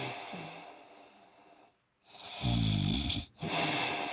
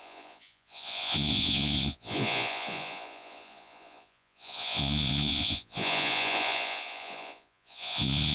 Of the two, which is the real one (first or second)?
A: first